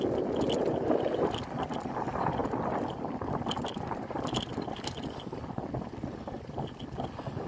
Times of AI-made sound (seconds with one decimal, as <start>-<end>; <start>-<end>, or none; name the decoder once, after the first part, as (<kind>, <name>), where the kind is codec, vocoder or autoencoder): 2.4-5.8 (vocoder, BigVGAN v2)